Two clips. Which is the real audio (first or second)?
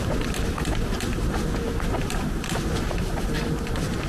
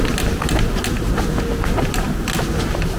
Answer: second